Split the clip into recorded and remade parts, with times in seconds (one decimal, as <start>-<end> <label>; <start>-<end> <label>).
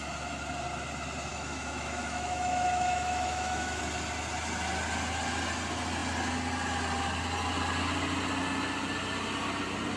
0.0-1.3 recorded; 1.3-3.8 remade; 3.8-10.0 recorded